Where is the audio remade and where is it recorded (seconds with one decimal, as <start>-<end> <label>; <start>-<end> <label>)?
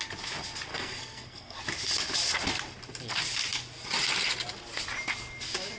0.0-0.7 recorded; 0.7-1.6 remade; 1.6-5.8 recorded